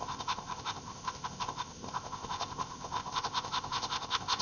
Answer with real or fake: fake